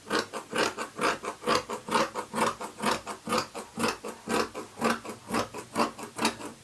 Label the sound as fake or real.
real